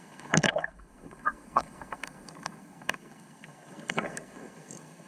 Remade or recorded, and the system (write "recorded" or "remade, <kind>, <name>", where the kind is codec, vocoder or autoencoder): remade, codec, SNAC